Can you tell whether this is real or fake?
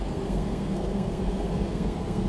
fake